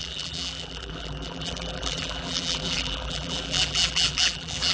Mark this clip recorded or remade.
remade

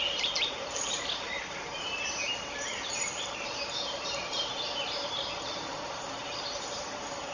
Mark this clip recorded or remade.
remade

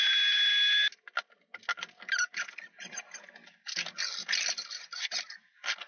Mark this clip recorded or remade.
recorded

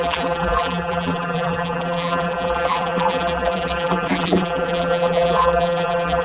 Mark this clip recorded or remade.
remade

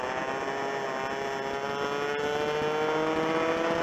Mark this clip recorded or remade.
recorded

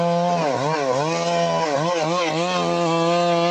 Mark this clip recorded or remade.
recorded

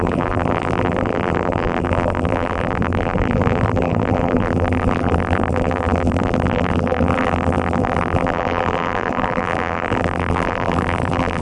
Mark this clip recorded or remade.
remade